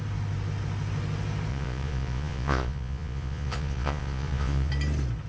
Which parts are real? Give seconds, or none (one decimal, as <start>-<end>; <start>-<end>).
0.0-1.5; 4.7-5.3